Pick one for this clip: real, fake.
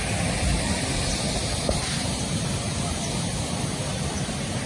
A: real